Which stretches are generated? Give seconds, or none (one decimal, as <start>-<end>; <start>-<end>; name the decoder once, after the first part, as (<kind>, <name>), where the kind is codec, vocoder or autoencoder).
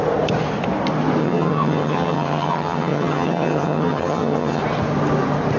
1.2-4.6 (vocoder, HiFi-GAN)